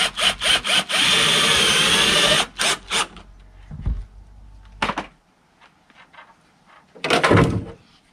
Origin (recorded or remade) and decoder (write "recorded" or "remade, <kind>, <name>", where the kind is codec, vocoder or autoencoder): recorded